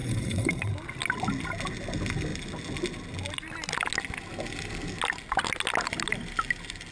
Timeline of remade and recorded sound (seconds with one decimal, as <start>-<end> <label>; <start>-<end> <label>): 0.0-0.7 remade; 0.7-6.9 recorded